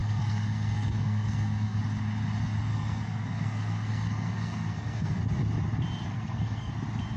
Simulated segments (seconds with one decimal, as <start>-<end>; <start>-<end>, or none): 0.0-1.8; 2.7-5.2; 6.1-6.7